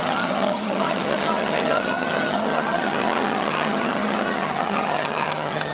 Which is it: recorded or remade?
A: remade